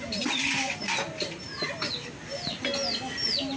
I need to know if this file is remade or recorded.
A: recorded